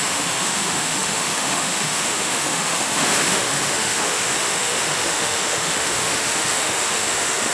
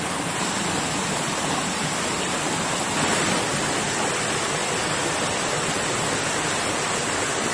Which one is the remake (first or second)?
first